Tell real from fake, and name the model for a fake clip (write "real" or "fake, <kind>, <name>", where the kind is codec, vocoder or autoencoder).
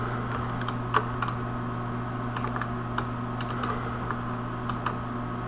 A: real